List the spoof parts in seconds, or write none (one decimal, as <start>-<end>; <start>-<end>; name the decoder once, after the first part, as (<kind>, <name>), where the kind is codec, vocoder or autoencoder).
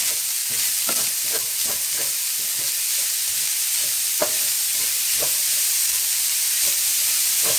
none